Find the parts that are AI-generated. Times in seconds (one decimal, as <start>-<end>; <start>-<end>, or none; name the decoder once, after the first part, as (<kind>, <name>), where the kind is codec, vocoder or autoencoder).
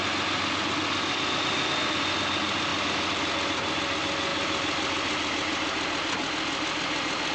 none